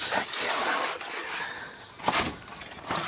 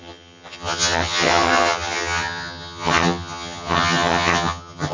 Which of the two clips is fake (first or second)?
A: second